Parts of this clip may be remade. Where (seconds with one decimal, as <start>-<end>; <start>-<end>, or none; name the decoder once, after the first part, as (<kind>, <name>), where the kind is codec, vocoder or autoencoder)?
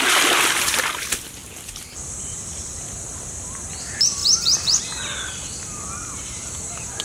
none